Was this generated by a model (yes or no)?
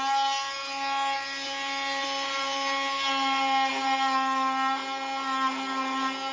no